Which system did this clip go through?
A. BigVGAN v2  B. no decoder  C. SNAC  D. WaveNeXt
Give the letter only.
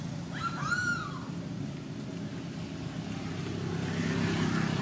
B